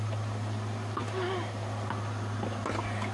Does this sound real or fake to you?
real